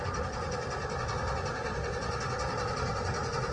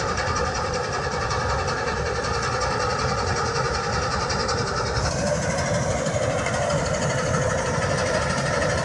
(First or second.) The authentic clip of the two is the first